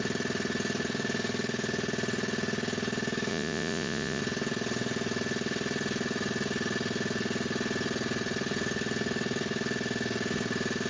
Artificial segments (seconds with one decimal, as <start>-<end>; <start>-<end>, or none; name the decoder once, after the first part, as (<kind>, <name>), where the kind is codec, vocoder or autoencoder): 3.3-4.2 (vocoder, Vocos)